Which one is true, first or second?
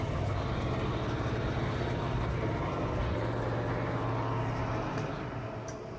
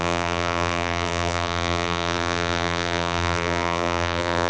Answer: first